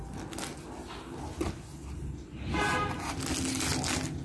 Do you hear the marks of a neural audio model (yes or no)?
no